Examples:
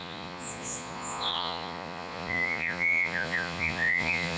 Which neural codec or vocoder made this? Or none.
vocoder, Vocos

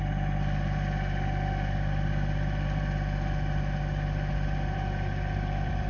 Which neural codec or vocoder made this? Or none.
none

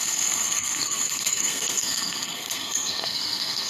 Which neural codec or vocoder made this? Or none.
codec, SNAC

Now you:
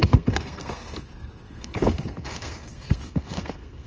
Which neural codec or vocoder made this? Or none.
codec, SNAC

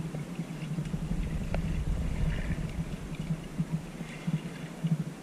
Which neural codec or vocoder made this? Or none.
none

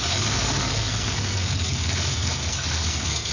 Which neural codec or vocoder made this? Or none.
codec, SNAC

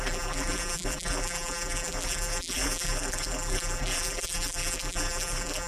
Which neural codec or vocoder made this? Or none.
vocoder, BigVGAN v2